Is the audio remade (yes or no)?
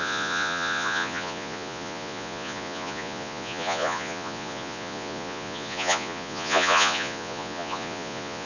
yes